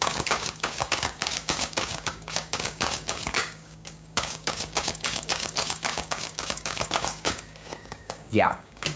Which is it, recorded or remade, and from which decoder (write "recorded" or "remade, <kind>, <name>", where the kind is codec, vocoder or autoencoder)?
remade, codec, DAC